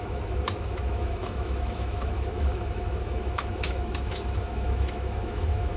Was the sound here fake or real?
fake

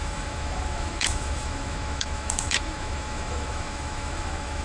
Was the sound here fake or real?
fake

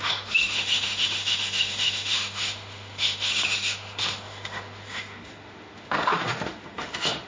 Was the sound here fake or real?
fake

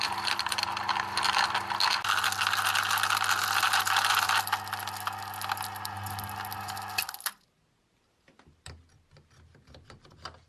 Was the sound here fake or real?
real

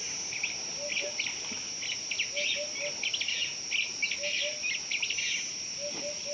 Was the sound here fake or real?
real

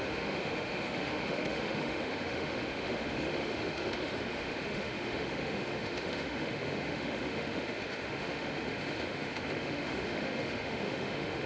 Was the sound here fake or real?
fake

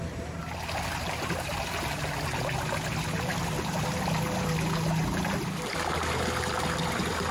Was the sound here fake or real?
real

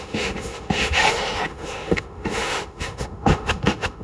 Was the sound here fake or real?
fake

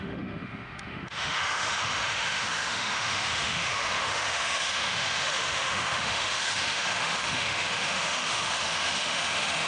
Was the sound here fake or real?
fake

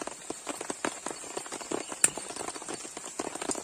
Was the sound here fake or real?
real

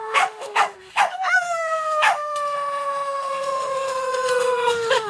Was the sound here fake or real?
fake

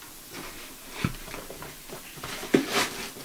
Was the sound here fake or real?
real